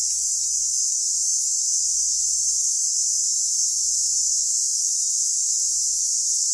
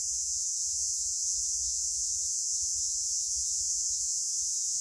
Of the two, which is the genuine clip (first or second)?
first